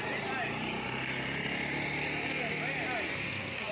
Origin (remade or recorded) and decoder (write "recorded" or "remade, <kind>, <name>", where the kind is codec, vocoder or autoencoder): recorded